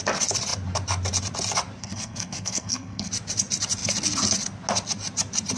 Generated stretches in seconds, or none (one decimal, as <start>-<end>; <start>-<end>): 1.8-3.1